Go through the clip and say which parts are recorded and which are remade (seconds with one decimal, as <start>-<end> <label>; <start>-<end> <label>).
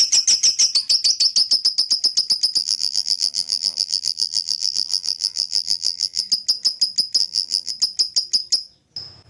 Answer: 0.0-2.6 recorded; 2.6-6.2 remade; 6.2-7.2 recorded; 7.2-7.7 remade; 7.7-9.3 recorded